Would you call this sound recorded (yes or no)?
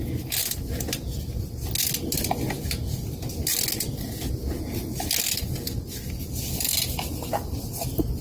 yes